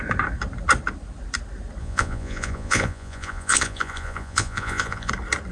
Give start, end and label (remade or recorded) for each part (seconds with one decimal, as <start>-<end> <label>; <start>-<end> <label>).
0.0-1.8 recorded; 1.8-5.1 remade; 5.1-5.5 recorded